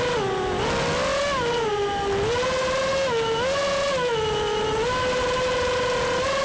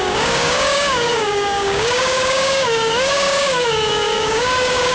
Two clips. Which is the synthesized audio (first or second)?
second